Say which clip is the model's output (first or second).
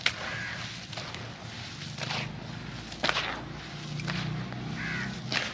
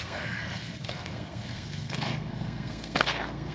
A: second